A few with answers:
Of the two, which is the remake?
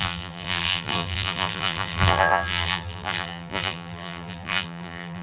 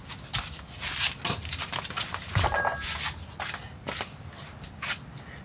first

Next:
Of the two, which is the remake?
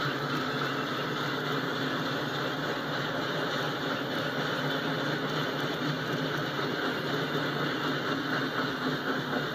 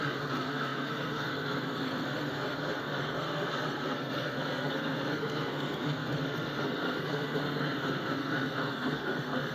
second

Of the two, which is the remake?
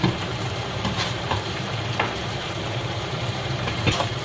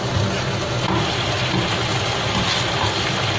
first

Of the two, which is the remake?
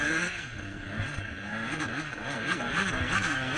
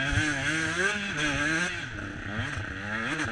first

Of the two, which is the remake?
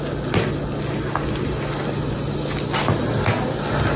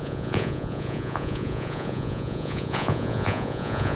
second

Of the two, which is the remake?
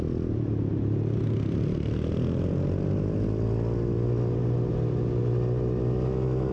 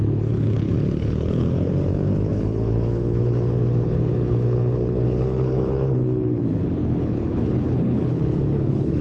second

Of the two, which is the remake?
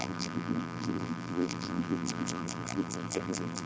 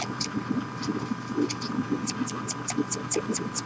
first